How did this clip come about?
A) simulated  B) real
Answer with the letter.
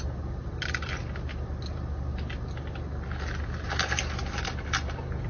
B